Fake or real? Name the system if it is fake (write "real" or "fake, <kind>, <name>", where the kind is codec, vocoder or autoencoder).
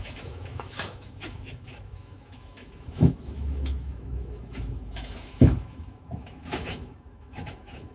fake, autoencoder, DAC-VAE